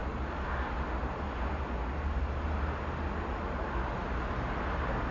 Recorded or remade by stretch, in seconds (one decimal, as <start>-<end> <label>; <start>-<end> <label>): 0.0-5.1 recorded